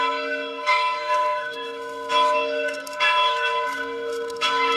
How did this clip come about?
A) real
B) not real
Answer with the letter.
B